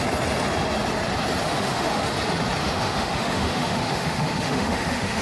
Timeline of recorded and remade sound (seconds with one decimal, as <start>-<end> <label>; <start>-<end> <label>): 0.0-1.4 recorded; 1.4-2.1 remade; 2.1-2.6 recorded; 2.6-5.2 remade